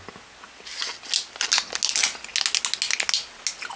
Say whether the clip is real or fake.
real